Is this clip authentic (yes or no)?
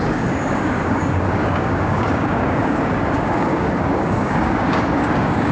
no